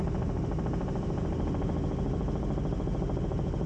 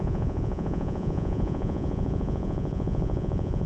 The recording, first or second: first